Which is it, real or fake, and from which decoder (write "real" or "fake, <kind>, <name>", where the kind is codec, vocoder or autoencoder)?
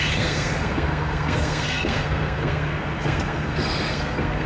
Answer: fake, codec, SNAC